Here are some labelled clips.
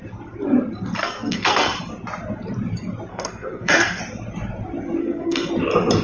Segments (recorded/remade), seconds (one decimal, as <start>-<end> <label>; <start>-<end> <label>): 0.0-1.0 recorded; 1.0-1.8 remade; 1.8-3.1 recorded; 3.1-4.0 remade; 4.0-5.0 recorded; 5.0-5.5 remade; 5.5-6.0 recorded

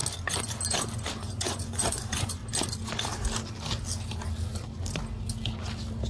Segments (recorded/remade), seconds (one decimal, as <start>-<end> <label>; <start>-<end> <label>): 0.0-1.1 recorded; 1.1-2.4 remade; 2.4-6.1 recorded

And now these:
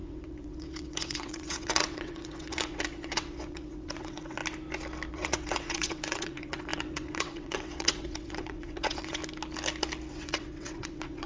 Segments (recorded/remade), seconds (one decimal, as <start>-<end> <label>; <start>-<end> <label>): 0.0-4.4 remade; 4.4-5.1 recorded; 5.1-9.2 remade; 9.2-10.1 recorded; 10.1-11.3 remade

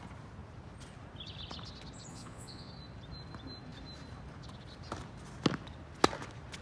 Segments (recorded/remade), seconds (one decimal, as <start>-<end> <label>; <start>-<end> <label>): 0.0-2.1 recorded; 2.1-2.7 remade; 2.7-6.6 recorded